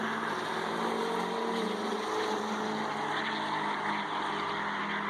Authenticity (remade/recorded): recorded